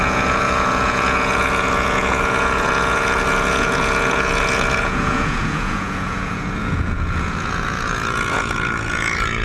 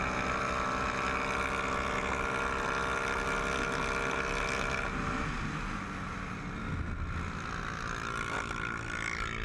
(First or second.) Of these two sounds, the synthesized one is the first